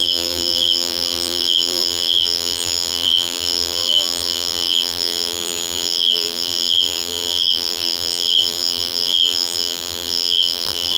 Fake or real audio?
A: fake